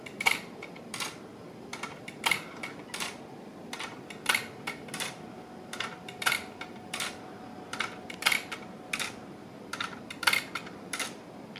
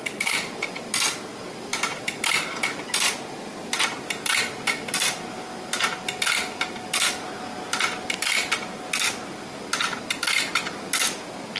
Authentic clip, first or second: second